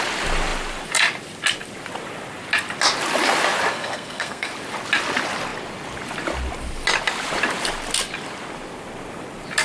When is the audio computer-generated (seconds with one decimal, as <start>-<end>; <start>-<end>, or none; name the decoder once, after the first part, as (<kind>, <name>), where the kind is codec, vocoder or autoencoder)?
3.7-4.5 (codec, SNAC)